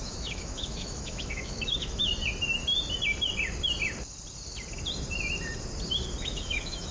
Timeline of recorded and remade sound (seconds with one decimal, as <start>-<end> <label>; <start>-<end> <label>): 0.0-2.1 remade; 2.1-6.2 recorded; 6.2-6.9 remade